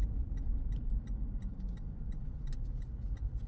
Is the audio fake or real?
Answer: real